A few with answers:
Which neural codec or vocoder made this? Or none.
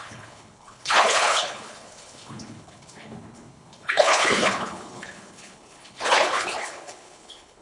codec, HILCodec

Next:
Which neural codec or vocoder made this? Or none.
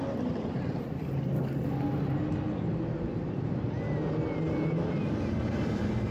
none